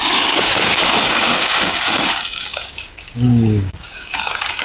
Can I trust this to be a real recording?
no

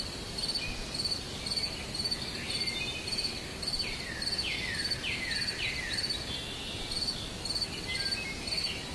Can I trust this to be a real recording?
yes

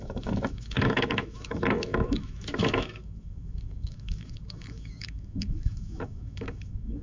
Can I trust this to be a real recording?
no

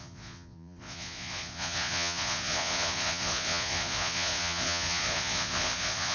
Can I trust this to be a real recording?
no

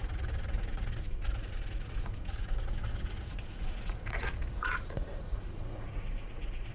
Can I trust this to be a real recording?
no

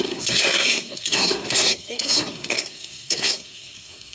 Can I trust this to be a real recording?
no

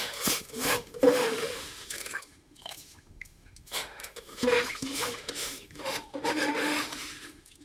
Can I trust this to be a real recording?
no